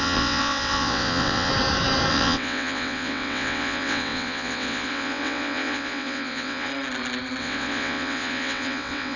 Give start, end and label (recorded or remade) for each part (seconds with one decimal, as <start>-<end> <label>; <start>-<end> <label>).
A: 0.0-1.5 remade; 1.5-2.1 recorded; 2.1-6.7 remade; 6.7-7.4 recorded; 7.4-9.2 remade